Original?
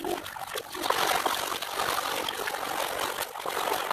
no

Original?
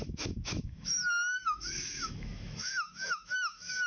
no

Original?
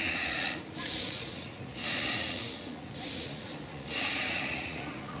no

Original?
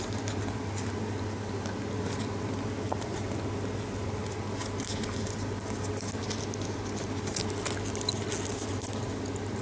yes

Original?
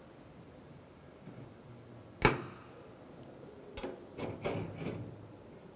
yes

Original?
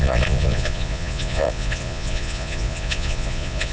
no